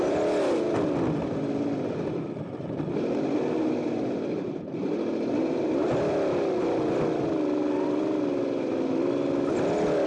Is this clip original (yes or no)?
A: yes